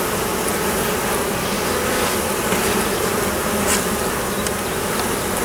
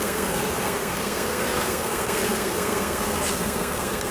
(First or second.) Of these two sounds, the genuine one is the first